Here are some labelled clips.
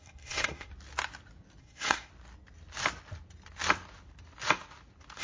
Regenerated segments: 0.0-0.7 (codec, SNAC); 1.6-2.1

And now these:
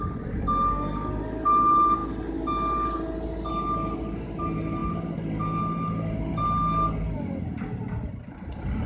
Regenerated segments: none